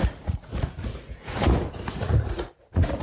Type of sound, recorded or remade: remade